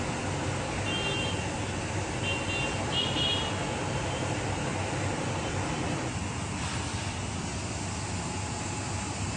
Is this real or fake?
real